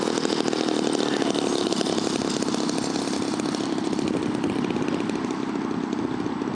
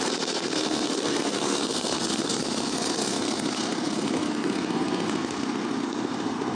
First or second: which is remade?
second